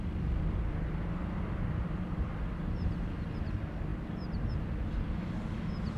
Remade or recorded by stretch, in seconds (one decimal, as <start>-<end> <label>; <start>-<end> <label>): 0.0-6.0 recorded